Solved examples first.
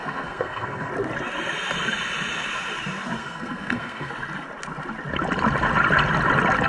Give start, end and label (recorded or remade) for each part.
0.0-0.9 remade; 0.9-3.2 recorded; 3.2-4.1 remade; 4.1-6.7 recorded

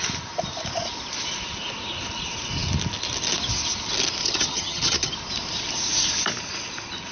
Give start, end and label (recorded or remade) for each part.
0.0-4.2 recorded; 4.2-5.1 remade; 5.1-7.1 recorded

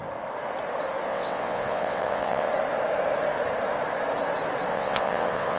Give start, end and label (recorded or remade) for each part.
0.0-1.1 recorded; 1.1-2.5 remade; 2.5-4.7 recorded; 4.7-5.6 remade